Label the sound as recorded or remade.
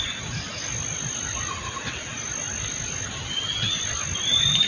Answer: recorded